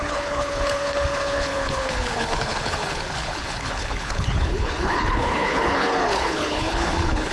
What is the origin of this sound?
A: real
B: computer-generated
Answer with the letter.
B